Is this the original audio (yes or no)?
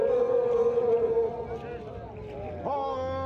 yes